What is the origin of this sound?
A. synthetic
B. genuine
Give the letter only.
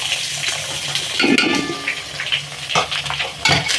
B